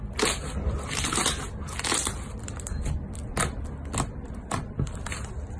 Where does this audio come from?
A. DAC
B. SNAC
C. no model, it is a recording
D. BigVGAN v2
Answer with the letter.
C